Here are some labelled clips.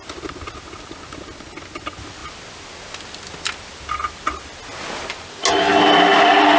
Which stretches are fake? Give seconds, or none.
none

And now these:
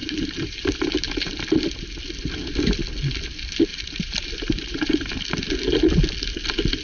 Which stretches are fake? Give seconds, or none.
0.0-1.4 (vocoder, BigVGAN v2); 3.7-5.2

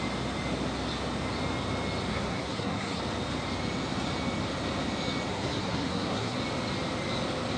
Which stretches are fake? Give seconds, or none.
2.1-3.0 (codec, SNAC); 5.3-6.4